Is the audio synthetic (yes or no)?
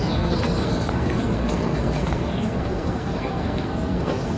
yes